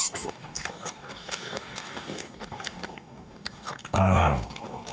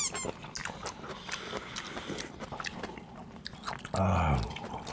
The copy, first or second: first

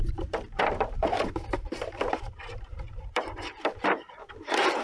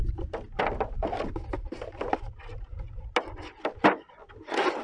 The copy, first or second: first